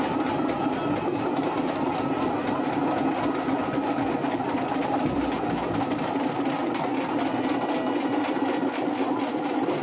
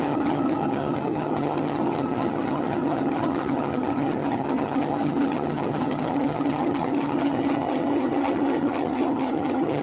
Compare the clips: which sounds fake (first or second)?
second